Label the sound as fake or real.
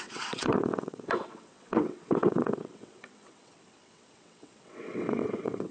fake